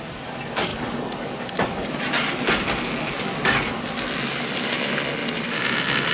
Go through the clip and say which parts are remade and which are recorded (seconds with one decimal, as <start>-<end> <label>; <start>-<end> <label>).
0.0-0.7 recorded; 0.7-2.3 remade; 2.3-5.2 recorded; 5.2-6.1 remade